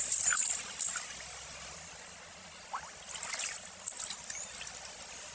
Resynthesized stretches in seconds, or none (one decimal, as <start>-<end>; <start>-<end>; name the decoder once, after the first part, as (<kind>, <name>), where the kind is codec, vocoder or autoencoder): none